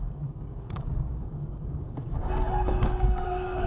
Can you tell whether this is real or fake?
fake